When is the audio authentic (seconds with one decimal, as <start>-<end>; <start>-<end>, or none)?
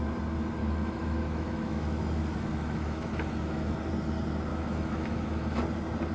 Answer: 0.0-0.6; 3.9-4.5; 5.6-6.1